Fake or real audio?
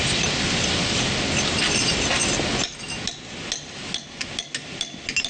real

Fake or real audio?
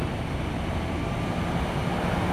real